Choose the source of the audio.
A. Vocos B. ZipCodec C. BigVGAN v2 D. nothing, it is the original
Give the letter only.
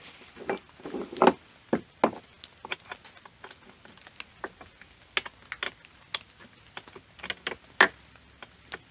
D